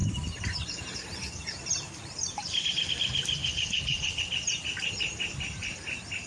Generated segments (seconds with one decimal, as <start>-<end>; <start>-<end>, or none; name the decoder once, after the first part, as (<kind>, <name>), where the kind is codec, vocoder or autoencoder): 3.4-4.2 (codec, HILCodec)